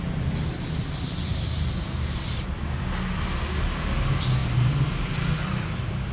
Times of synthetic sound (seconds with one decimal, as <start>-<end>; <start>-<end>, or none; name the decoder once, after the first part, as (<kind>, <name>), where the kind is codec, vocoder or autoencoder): none